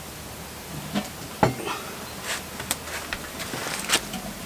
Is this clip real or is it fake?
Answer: real